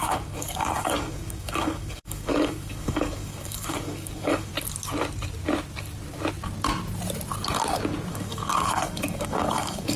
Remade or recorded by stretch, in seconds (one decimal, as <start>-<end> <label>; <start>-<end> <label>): 0.0-4.5 remade; 4.5-8.1 recorded; 8.1-10.0 remade